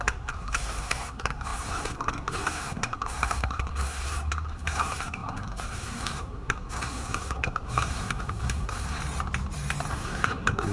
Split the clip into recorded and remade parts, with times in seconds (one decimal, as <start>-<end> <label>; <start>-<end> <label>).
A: 0.0-9.0 remade; 9.0-9.9 recorded; 9.9-10.7 remade

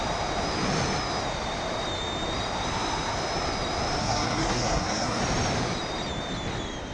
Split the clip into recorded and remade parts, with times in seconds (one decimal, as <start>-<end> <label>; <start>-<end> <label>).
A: 0.0-4.0 recorded; 4.0-5.2 remade; 5.2-6.9 recorded